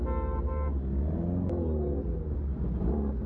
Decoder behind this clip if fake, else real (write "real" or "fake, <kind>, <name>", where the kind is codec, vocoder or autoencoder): real